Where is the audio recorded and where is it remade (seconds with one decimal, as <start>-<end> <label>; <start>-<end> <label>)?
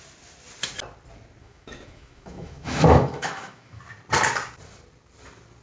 0.0-1.4 recorded; 1.4-3.8 remade; 3.8-5.6 recorded